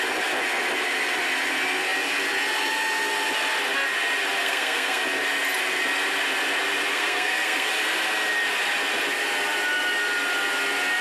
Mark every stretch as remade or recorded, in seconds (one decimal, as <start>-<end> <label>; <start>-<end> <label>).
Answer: 0.0-4.4 recorded; 4.4-5.0 remade; 5.0-6.9 recorded; 6.9-7.7 remade; 7.7-11.0 recorded